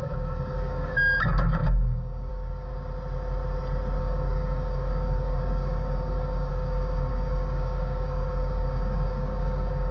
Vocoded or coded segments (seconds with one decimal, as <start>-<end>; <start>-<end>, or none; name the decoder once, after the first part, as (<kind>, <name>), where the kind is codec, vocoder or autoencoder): 0.0-2.7 (codec, DAC); 4.0-9.9